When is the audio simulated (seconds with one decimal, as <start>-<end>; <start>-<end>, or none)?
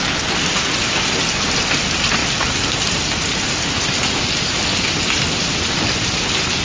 none